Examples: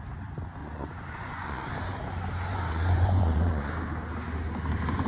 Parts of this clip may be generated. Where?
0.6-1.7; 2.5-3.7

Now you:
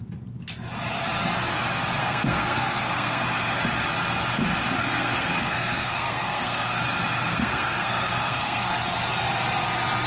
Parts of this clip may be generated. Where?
2.0-3.2; 4.8-6.8; 7.3-8.7

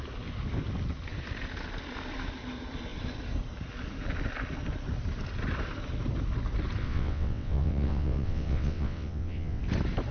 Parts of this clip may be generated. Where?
6.8-9.6

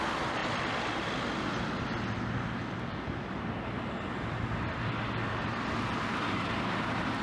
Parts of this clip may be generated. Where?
none

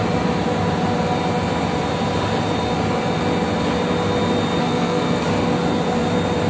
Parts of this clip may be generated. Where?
4.6-5.2

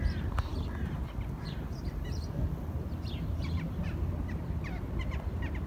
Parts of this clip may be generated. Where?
none

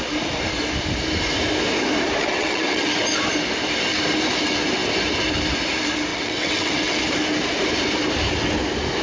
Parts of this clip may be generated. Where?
2.2-2.8; 6.1-7.0

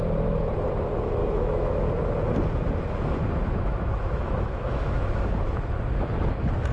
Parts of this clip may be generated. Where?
1.2-1.8; 3.4-5.5